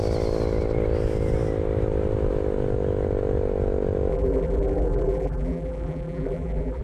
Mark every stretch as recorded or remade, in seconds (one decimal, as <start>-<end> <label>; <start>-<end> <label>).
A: 0.0-4.1 recorded; 4.1-6.8 remade